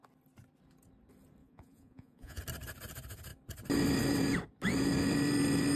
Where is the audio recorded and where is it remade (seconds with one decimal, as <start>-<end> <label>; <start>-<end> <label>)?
0.0-1.4 recorded; 1.4-2.4 remade; 2.4-5.8 recorded